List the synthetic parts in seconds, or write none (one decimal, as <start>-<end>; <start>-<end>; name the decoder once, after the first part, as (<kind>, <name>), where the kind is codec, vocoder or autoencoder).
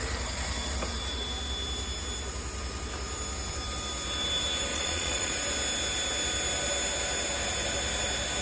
4.7-5.3 (vocoder, Vocos)